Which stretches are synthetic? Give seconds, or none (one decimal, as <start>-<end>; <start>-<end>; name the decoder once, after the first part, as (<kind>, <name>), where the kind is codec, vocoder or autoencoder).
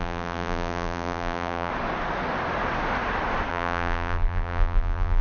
0.0-1.7 (vocoder, BigVGAN v2); 3.5-5.2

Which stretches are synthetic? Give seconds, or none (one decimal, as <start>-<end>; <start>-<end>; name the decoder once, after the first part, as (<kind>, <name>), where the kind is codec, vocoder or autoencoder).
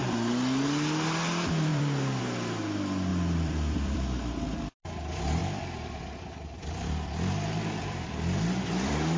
1.7-2.2 (vocoder, BigVGAN v2); 3.1-5.0; 5.4-9.2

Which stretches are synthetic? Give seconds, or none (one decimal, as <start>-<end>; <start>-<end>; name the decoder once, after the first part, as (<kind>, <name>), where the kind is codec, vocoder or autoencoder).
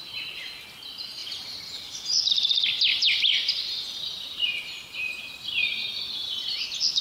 none